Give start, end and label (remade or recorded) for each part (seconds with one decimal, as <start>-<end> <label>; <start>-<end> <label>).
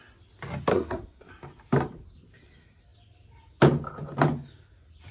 0.0-0.7 recorded; 0.7-1.3 remade; 1.3-5.1 recorded